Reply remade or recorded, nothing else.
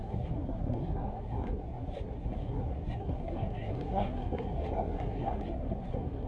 remade